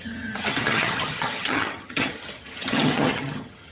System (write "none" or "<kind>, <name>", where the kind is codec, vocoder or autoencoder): vocoder, HiFi-GAN